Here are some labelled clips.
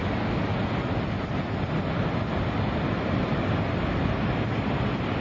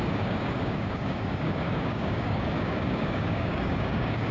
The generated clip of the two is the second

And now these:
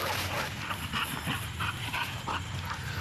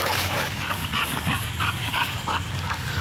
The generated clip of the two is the second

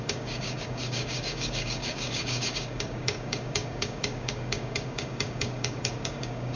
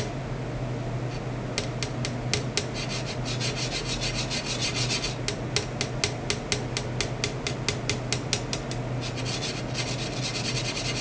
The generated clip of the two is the first